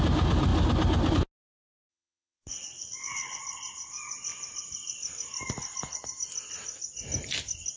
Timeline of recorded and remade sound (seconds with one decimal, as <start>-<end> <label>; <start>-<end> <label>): 0.0-1.9 recorded; 1.9-3.4 remade; 3.4-7.8 recorded